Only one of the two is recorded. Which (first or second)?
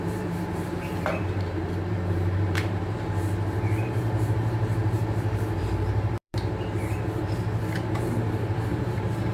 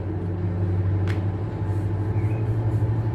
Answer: second